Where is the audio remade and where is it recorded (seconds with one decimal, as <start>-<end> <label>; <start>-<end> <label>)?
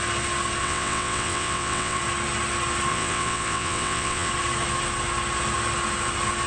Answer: 0.0-0.6 recorded; 0.6-2.0 remade; 2.0-2.9 recorded; 2.9-4.3 remade; 4.3-6.5 recorded